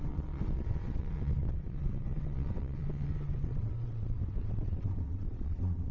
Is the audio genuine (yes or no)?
no